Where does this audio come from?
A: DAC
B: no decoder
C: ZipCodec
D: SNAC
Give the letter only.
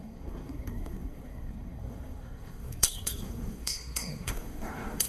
D